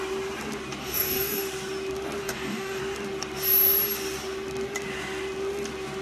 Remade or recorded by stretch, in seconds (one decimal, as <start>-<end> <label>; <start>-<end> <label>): 0.0-0.8 recorded; 0.8-1.4 remade; 1.4-2.2 recorded; 2.2-2.8 remade; 2.8-6.0 recorded